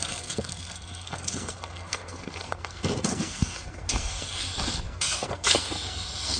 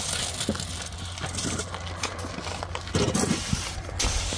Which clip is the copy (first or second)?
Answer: first